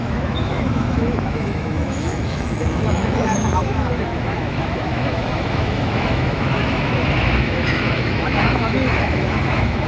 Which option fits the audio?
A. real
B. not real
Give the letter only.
B